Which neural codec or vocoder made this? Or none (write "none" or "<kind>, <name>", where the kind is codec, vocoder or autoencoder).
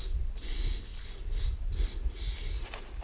none